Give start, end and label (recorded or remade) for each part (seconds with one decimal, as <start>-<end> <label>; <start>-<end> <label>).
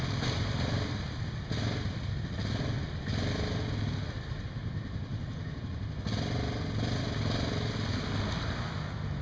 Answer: 0.0-9.2 recorded